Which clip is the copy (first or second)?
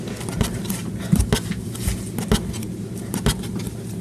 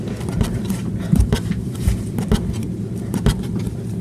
second